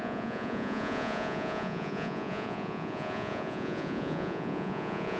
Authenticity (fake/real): fake